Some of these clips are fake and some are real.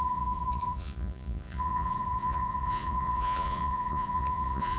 fake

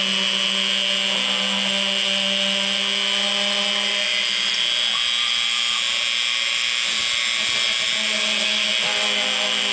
real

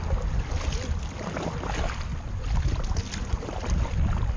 real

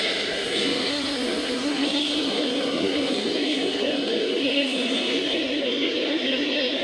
fake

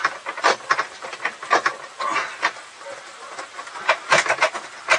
real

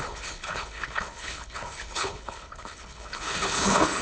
fake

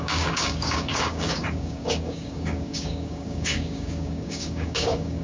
fake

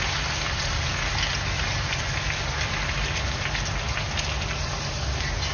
real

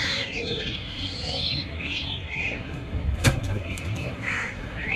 fake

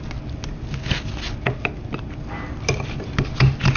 real